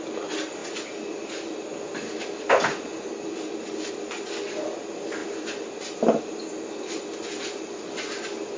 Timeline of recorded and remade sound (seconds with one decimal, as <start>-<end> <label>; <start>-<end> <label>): 0.0-8.6 recorded